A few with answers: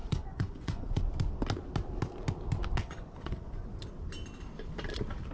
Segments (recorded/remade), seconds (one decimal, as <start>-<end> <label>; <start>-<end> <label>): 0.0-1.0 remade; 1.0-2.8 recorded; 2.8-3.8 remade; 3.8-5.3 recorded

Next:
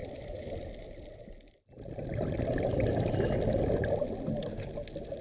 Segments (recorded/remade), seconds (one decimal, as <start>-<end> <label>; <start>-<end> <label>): 0.0-5.2 recorded

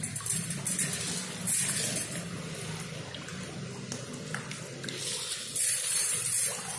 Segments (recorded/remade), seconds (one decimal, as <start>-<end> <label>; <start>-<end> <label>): 0.0-6.8 recorded

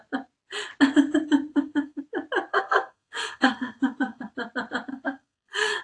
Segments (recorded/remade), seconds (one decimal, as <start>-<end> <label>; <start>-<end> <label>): 0.0-1.5 recorded; 1.5-2.0 remade; 2.0-2.5 recorded; 2.5-4.3 remade; 4.3-4.9 recorded; 4.9-5.8 remade

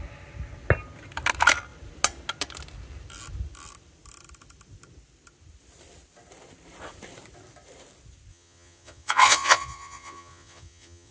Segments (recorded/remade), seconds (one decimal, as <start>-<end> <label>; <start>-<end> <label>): 0.0-8.3 recorded; 8.3-11.1 remade

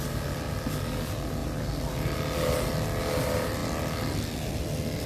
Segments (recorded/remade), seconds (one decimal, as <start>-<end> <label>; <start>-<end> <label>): 0.0-5.1 recorded

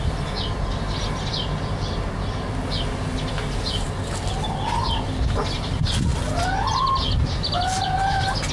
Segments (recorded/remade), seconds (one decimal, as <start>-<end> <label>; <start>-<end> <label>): 0.0-8.5 recorded